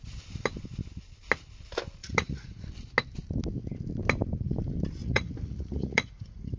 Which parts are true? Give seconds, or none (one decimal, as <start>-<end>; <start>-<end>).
0.0-2.0; 2.6-5.0